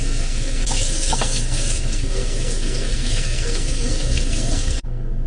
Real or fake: fake